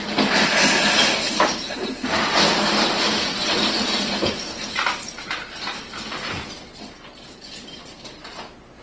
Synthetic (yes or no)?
no